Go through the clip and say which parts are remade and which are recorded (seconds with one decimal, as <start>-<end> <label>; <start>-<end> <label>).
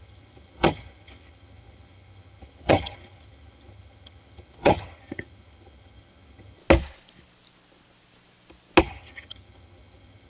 0.0-6.6 remade; 6.6-8.8 recorded; 8.8-10.3 remade